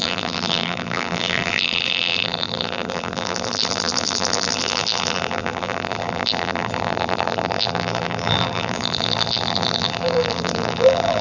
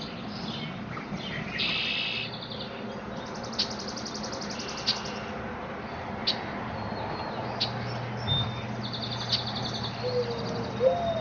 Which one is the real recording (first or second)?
second